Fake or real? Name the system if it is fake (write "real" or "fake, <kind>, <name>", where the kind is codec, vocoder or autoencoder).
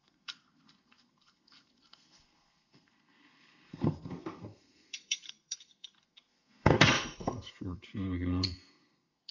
fake, codec, SNAC